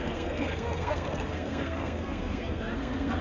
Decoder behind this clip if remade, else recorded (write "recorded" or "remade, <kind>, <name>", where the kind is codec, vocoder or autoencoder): remade, codec, SNAC